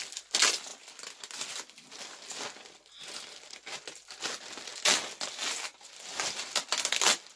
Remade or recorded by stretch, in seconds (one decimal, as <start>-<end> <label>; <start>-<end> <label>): 0.0-7.4 recorded